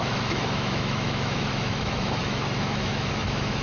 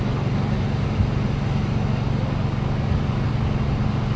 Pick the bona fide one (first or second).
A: second